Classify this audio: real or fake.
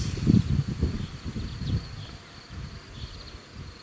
real